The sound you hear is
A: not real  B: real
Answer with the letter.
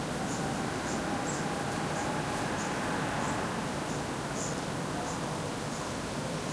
B